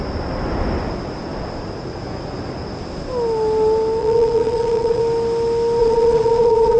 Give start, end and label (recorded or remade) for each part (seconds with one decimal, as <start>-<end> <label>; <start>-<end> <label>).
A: 0.0-4.0 recorded; 4.0-5.0 remade; 5.0-5.8 recorded; 5.8-6.8 remade